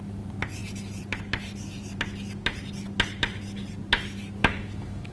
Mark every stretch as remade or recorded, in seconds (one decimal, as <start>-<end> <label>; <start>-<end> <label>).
0.0-4.4 recorded; 4.4-5.1 remade